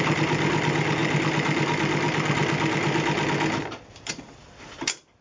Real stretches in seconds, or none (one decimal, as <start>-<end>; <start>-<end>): 0.0-5.2